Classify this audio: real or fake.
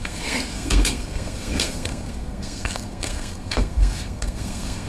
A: fake